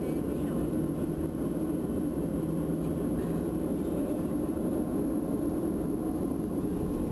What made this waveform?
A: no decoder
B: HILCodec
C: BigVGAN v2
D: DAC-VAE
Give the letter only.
A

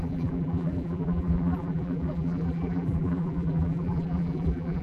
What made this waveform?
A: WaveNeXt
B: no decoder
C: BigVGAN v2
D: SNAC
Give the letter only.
C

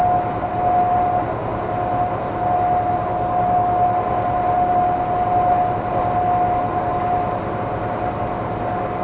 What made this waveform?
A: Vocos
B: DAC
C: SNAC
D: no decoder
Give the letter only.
D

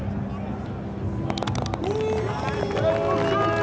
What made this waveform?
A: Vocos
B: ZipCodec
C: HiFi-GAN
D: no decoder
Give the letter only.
D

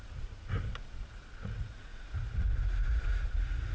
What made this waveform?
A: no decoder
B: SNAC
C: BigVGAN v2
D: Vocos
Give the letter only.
D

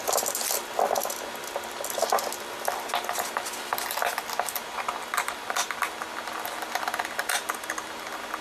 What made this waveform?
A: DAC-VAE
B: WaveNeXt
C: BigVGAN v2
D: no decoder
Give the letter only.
D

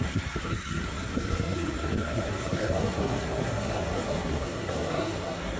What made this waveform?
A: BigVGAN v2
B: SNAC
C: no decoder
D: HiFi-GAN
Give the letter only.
B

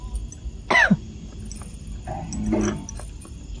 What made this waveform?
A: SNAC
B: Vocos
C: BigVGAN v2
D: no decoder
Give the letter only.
D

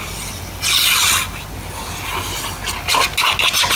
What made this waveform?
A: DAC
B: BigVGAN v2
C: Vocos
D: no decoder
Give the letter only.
D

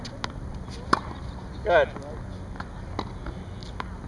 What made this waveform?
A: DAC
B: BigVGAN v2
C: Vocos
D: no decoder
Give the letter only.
D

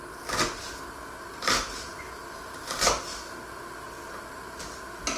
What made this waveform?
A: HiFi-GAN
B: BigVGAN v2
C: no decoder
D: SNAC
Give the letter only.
C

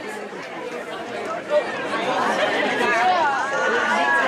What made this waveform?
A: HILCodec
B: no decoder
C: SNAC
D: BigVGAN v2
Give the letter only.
D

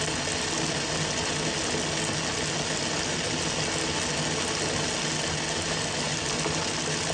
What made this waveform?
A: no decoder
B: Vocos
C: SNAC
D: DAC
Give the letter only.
A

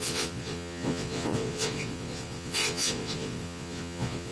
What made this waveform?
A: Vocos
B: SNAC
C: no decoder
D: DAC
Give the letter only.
A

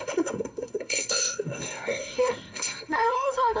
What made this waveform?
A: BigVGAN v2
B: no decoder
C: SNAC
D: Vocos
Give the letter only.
C